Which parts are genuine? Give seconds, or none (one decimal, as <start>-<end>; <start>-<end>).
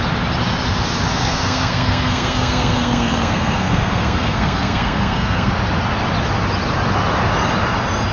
0.0-1.1; 5.5-8.1